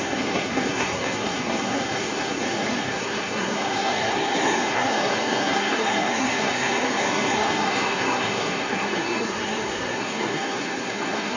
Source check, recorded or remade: remade